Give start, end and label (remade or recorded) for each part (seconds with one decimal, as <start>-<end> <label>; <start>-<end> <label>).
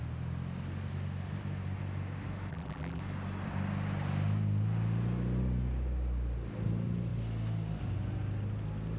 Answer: 0.0-2.5 recorded; 2.5-3.0 remade; 3.0-9.0 recorded